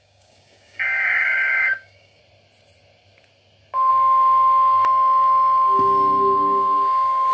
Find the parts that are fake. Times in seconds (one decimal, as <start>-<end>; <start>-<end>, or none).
0.0-2.2; 3.9-7.3